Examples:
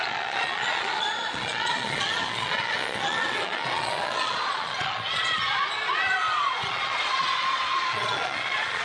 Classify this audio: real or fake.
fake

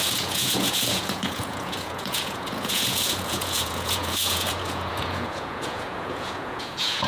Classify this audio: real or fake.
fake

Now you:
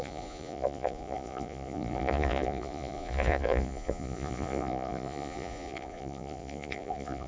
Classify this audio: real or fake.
fake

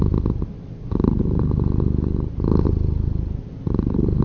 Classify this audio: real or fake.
real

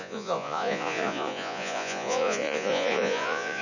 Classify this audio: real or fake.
fake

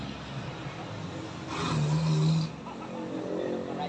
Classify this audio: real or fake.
real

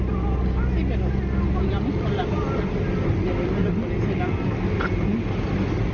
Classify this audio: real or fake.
real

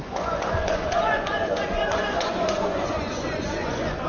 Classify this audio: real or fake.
fake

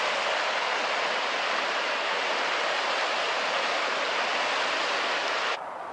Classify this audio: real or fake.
real